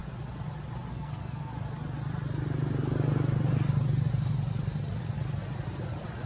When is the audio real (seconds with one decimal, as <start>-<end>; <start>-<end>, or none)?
0.0-0.9; 1.5-6.3